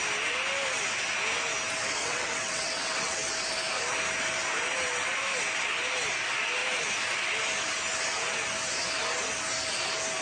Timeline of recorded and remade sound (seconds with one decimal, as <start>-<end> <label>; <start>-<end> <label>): 0.0-2.0 recorded; 2.0-3.3 remade; 3.3-10.2 recorded